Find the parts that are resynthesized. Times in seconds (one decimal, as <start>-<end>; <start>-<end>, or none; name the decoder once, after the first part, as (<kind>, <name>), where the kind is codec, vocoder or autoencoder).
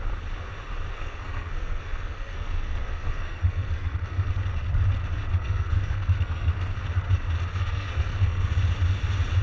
0.9-4.3 (codec, SNAC); 5.3-6.8; 7.5-8.6